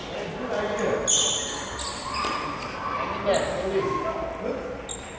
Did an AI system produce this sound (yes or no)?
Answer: no